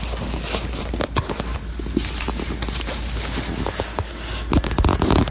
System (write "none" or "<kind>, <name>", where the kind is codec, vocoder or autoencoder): none